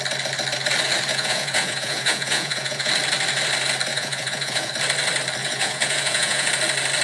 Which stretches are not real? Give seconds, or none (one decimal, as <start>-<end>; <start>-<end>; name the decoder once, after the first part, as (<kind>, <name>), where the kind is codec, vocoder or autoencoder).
1.1-2.9 (vocoder, Vocos); 3.9-4.7; 5.4-6.5